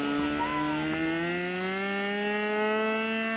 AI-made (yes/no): no